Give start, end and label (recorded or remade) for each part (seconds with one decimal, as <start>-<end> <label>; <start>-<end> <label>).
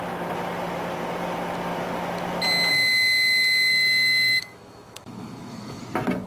0.0-3.7 recorded; 3.7-5.8 remade; 5.8-6.3 recorded